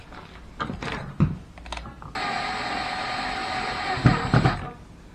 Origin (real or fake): real